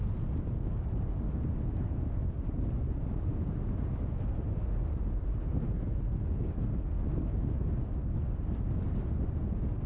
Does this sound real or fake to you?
real